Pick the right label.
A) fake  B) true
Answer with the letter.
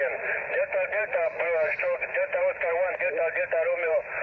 A